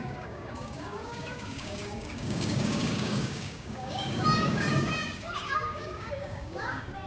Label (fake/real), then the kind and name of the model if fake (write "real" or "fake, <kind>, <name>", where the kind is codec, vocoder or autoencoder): fake, codec, DAC